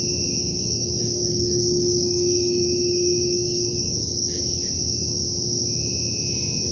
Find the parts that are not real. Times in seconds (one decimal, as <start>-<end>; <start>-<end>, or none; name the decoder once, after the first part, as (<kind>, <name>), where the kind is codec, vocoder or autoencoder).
0.4-4.4 (codec, DAC)